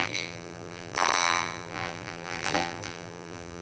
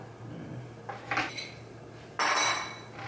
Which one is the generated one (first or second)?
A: first